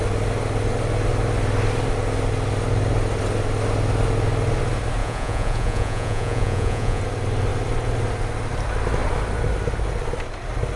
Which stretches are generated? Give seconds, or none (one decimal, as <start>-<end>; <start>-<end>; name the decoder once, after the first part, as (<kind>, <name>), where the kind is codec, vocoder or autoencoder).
5.0-7.0 (vocoder, Vocos)